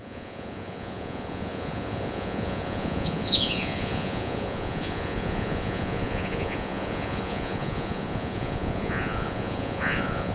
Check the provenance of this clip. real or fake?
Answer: fake